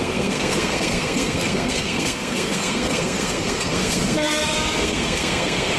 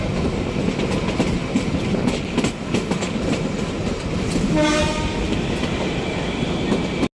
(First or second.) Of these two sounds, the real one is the second